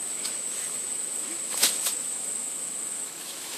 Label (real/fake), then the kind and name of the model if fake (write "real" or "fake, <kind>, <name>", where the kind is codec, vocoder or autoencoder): fake, autoencoder, DAC-VAE